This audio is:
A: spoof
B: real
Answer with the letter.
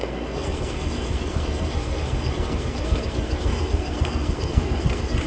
A